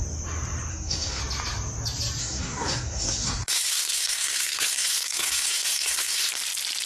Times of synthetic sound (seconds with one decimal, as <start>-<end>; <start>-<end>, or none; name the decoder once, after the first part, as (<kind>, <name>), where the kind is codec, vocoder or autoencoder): 0.7-1.2 (codec, SNAC); 2.2-6.3